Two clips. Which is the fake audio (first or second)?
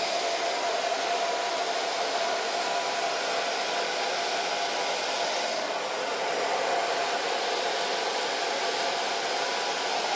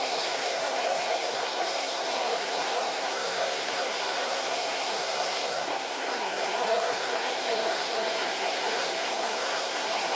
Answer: second